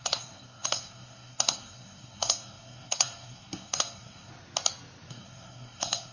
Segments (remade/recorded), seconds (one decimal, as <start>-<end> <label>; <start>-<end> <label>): 0.0-4.3 remade; 4.3-5.1 recorded; 5.1-6.1 remade